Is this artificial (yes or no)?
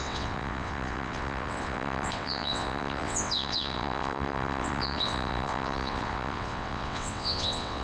yes